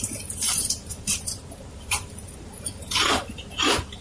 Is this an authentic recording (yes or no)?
no